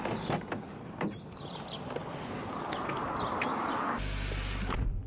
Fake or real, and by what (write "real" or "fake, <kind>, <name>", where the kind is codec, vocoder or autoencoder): real